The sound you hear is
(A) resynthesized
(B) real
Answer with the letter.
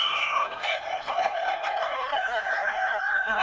A